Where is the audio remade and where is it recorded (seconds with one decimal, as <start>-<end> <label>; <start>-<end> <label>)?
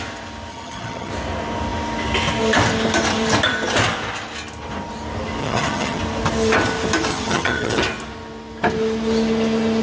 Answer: 0.0-0.5 recorded; 0.5-1.1 remade; 1.1-5.4 recorded; 5.4-6.0 remade; 6.0-7.1 recorded; 7.1-7.8 remade; 7.8-9.8 recorded